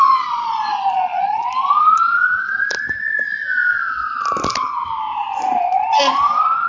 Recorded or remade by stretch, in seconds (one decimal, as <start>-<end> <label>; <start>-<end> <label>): 0.0-2.6 remade; 2.6-6.0 recorded; 6.0-6.7 remade